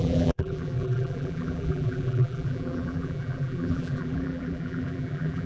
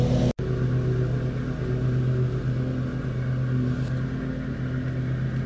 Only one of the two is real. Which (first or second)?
second